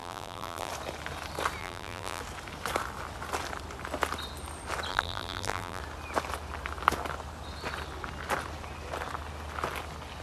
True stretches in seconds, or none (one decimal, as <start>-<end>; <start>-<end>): 0.7-1.6; 2.2-4.9; 5.8-10.2